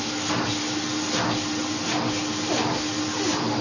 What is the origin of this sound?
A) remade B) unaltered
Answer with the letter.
B